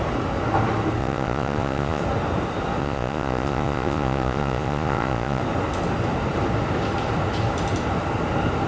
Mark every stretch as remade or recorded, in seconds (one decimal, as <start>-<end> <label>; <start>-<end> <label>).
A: 0.0-1.0 recorded; 1.0-2.0 remade; 2.0-2.8 recorded; 2.8-5.4 remade; 5.4-8.7 recorded